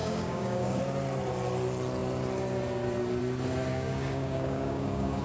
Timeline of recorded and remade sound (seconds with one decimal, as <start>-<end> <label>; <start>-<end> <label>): 0.0-0.8 remade; 0.8-3.7 recorded; 3.7-5.2 remade